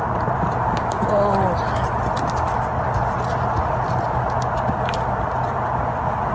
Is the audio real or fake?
real